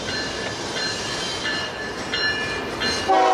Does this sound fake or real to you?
real